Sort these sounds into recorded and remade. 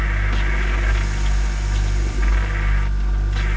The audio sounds recorded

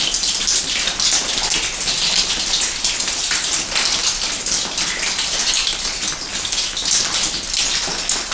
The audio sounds recorded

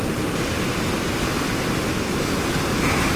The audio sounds recorded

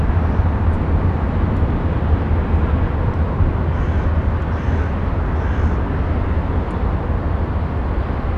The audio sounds recorded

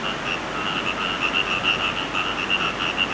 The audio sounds recorded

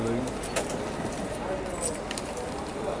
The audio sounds recorded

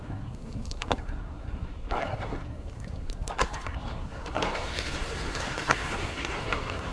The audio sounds remade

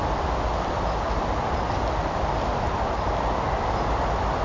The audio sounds recorded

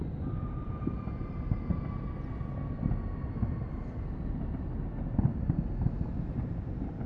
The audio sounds recorded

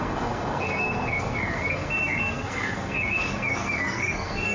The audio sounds remade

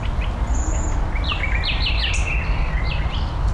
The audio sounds recorded